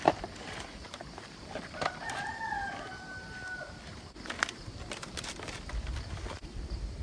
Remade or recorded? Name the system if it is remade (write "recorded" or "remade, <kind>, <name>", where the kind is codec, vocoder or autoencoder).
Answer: recorded